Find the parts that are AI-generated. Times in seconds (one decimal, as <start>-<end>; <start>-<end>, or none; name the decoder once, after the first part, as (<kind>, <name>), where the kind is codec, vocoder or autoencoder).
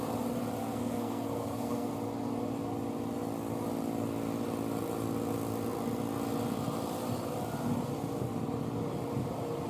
0.6-1.9 (codec, SNAC)